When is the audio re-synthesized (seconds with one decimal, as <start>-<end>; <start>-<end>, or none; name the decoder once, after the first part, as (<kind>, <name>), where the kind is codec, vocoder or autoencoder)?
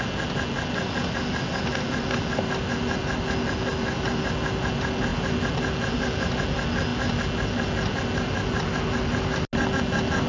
none